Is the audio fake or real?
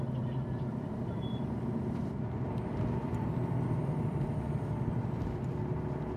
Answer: fake